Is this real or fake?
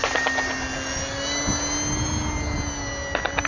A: real